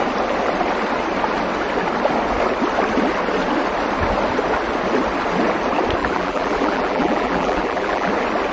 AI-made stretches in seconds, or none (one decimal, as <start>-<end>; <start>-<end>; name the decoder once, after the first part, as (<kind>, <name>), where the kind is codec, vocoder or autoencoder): 6.0-8.1 (vocoder, BigVGAN v2)